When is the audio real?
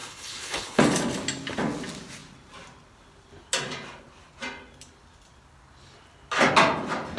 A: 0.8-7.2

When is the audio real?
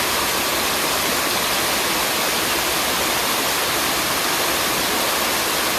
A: 0.0-5.8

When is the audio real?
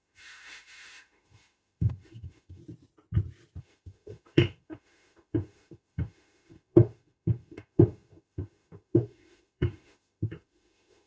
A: 2.6-3.6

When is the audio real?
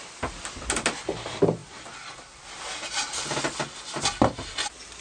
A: 0.0-5.0